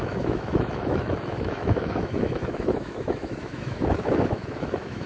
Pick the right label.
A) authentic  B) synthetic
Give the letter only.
B